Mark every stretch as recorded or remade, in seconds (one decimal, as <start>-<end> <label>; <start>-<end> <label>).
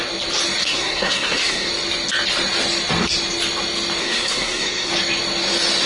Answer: 0.0-0.6 recorded; 0.6-1.7 remade; 1.7-4.0 recorded; 4.0-4.9 remade; 4.9-5.9 recorded